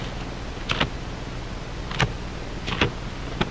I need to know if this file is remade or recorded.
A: recorded